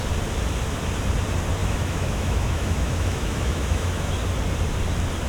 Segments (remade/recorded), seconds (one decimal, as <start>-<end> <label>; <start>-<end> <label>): 0.0-1.6 recorded; 1.6-4.1 remade; 4.1-5.3 recorded